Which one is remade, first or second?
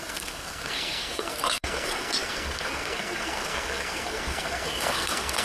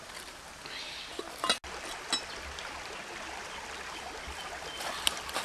first